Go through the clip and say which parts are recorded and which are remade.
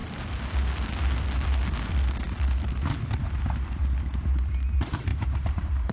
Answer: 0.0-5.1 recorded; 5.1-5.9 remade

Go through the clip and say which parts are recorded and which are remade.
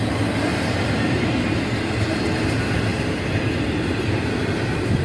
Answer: 0.0-0.5 recorded; 0.5-1.3 remade; 1.3-5.0 recorded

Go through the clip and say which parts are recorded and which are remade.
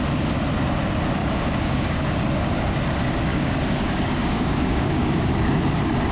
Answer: 0.0-1.2 recorded; 1.2-2.1 remade; 2.1-3.3 recorded; 3.3-5.3 remade; 5.3-6.1 recorded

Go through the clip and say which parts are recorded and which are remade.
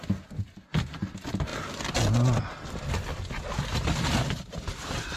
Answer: 0.0-3.7 recorded; 3.7-5.2 remade